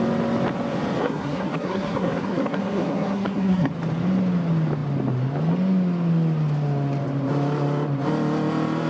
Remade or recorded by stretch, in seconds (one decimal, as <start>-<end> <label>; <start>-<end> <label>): 0.0-1.0 recorded; 1.0-3.7 remade; 3.7-8.9 recorded